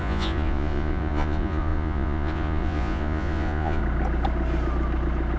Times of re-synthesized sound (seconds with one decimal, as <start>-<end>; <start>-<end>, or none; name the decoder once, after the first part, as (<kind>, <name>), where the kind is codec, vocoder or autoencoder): 0.0-3.8 (vocoder, Vocos)